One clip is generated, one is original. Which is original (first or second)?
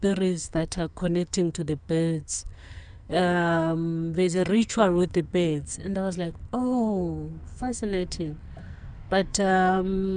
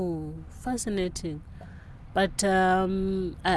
second